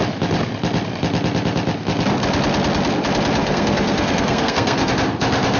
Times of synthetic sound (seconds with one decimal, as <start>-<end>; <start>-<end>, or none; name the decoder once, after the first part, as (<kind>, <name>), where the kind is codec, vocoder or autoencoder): 3.4-4.9 (codec, SNAC)